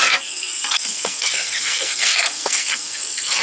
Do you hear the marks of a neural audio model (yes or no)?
yes